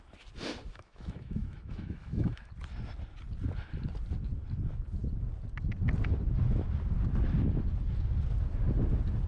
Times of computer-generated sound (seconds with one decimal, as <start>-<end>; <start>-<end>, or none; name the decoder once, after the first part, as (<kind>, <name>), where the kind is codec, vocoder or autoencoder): 0.7-2.5 (autoencoder, DAC-VAE)